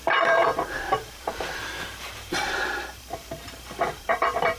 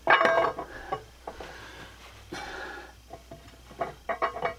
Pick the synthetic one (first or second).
first